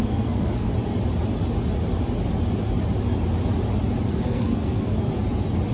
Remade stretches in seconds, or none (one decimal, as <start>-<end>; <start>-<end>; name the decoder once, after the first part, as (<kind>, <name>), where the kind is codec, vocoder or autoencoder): 0.0-0.7 (codec, SNAC); 4.1-5.1